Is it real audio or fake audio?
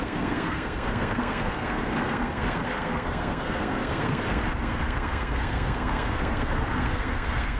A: fake